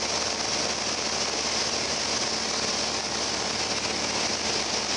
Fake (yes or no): no